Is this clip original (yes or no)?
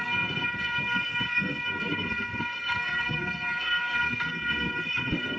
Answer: no